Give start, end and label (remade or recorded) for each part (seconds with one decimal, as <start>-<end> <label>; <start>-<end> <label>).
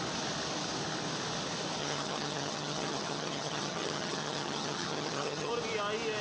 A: 0.0-1.8 recorded; 1.8-5.5 remade; 5.5-6.2 recorded